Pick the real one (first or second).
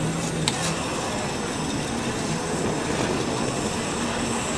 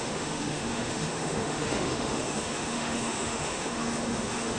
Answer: first